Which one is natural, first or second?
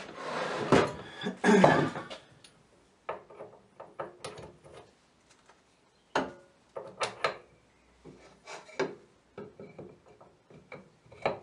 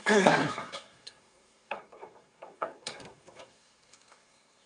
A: first